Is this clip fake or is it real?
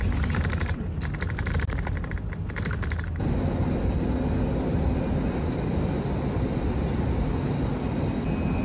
real